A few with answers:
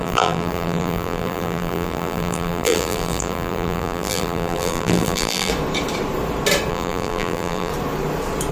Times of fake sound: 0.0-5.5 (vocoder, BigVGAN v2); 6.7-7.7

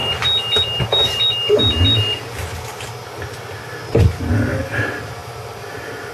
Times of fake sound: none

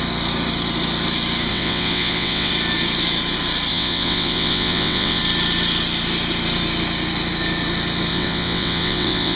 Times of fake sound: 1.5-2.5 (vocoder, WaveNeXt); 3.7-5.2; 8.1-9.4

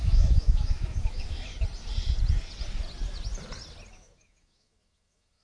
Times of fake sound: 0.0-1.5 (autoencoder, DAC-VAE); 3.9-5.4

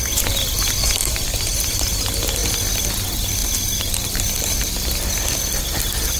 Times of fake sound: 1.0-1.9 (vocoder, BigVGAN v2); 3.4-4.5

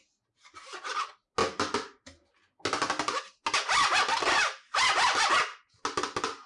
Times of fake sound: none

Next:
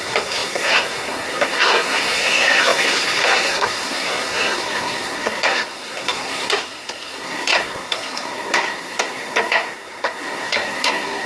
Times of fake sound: 0.0-11.3 (codec, SNAC)

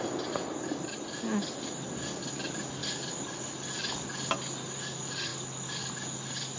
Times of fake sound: none